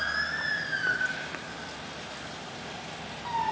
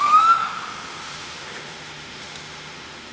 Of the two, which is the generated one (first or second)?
second